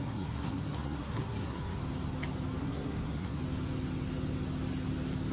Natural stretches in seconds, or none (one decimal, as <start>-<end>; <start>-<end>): 1.8-2.6; 3.4-5.3